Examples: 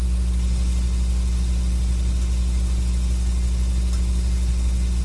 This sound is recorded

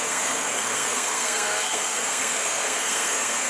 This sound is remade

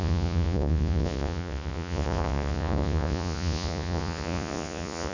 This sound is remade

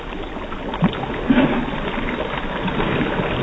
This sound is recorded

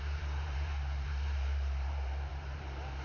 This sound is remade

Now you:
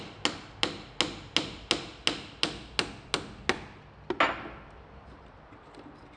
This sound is recorded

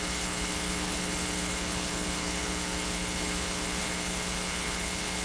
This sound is remade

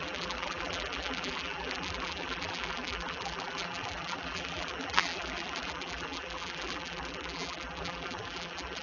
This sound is remade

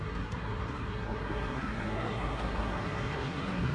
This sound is remade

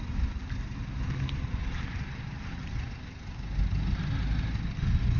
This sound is recorded